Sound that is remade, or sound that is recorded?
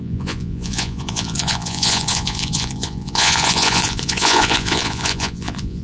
remade